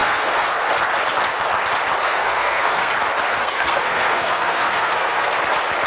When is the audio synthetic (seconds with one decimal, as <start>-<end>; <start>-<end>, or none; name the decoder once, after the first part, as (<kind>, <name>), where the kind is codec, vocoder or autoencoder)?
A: 0.0-0.7 (codec, SNAC); 2.0-2.9; 3.3-5.3